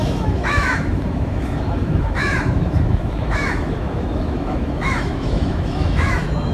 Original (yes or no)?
no